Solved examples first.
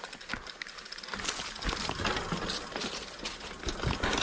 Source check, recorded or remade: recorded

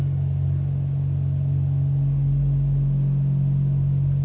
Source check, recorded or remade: recorded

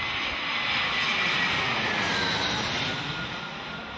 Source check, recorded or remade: recorded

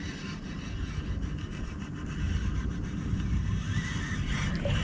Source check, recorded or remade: recorded